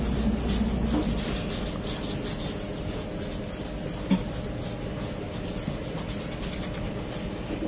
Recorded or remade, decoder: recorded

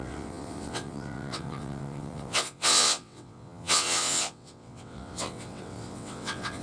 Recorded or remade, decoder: remade, vocoder, WaveNeXt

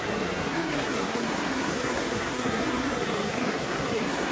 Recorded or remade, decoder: remade, codec, SNAC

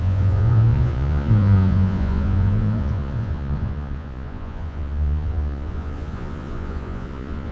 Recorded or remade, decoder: remade, vocoder, Vocos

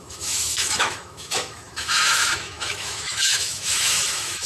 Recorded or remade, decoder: remade, autoencoder, DAC-VAE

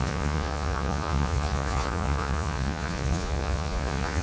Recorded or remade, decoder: remade, vocoder, Vocos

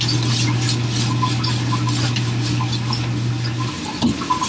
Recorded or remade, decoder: recorded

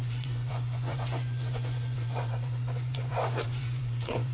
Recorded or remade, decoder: remade, vocoder, Vocos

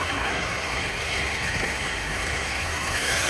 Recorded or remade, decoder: remade, codec, SNAC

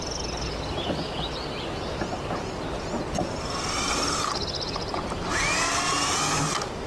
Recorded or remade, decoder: recorded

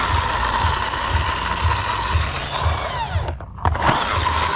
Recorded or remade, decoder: recorded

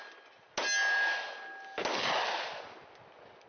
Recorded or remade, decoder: recorded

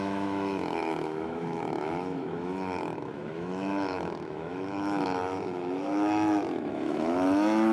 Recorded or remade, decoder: remade, autoencoder, DAC-VAE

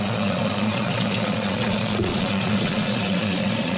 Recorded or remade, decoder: remade, vocoder, Vocos